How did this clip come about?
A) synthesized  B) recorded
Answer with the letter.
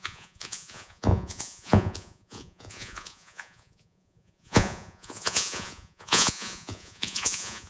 A